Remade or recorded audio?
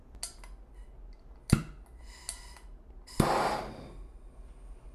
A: recorded